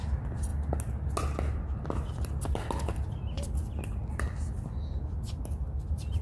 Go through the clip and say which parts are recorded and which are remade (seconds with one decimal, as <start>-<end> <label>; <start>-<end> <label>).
0.0-6.2 recorded